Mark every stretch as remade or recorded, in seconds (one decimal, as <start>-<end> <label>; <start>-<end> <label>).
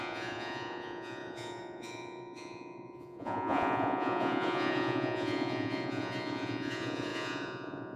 0.0-8.0 remade